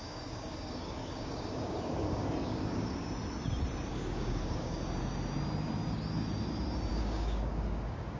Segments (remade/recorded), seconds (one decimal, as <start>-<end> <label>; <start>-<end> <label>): 0.0-3.1 remade; 3.1-3.9 recorded; 3.9-4.8 remade; 4.8-6.9 recorded; 6.9-8.2 remade